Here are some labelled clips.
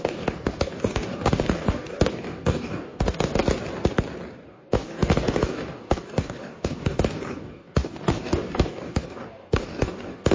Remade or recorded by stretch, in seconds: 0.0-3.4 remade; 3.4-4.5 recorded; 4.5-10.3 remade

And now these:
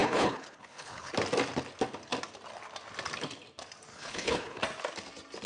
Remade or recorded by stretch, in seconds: 0.0-1.1 remade; 1.1-3.9 recorded; 3.9-4.6 remade; 4.6-5.5 recorded

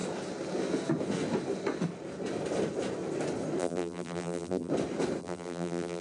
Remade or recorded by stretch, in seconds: 0.0-3.6 recorded; 3.6-4.7 remade; 4.7-5.2 recorded; 5.2-6.0 remade

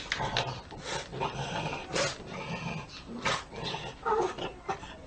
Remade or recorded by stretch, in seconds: 0.0-1.1 remade; 1.1-4.2 recorded; 4.2-5.1 remade